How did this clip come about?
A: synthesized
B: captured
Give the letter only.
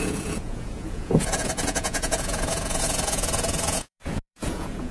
A